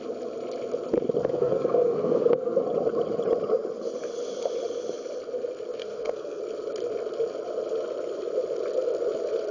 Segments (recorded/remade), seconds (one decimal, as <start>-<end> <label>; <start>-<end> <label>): 0.0-1.2 recorded; 1.2-2.6 remade; 2.6-5.8 recorded; 5.8-6.4 remade; 6.4-9.5 recorded